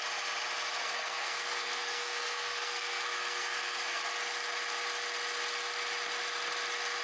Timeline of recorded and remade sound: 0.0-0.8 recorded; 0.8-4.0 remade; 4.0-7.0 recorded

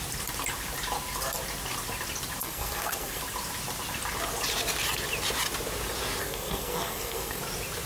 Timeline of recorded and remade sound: 0.0-2.4 recorded; 2.4-3.2 remade; 3.2-6.2 recorded; 6.2-7.4 remade; 7.4-7.9 recorded

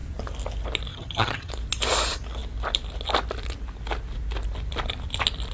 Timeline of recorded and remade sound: 0.0-0.9 recorded; 0.9-1.5 remade; 1.5-5.5 recorded